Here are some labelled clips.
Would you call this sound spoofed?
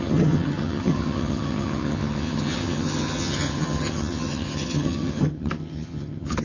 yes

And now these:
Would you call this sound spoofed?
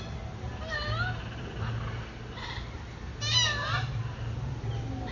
no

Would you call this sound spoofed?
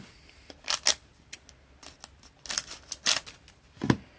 no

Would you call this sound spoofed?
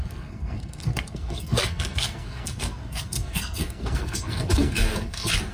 yes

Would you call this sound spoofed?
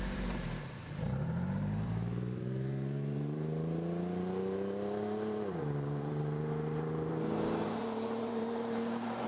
yes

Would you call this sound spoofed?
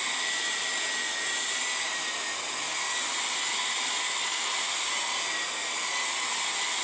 no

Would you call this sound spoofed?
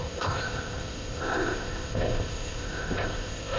yes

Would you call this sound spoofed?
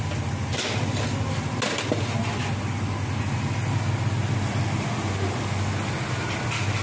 no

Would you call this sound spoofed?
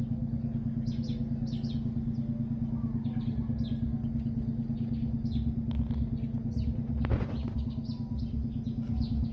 no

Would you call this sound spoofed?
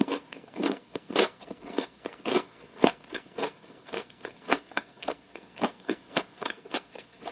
yes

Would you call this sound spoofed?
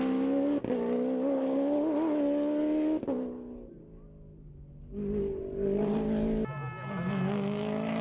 no